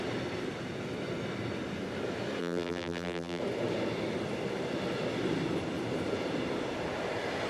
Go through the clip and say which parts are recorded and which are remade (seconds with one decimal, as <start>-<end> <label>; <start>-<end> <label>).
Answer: 0.0-2.4 recorded; 2.4-3.4 remade; 3.4-7.5 recorded